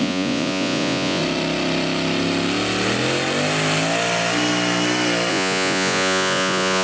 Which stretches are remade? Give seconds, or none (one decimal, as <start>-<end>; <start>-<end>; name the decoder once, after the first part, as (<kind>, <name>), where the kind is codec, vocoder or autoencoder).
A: 0.0-1.2 (vocoder, Vocos); 5.3-6.8